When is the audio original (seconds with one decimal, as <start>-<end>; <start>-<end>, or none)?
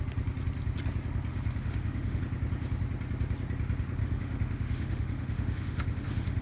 0.0-1.3; 2.2-4.0